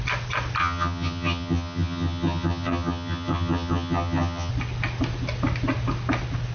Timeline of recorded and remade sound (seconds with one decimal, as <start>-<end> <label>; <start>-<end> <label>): 0.0-0.6 recorded; 0.6-4.5 remade; 4.5-6.5 recorded